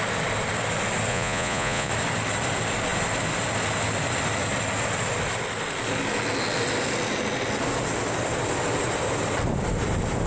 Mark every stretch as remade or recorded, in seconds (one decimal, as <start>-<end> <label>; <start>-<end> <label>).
0.0-1.1 recorded; 1.1-1.9 remade; 1.9-10.3 recorded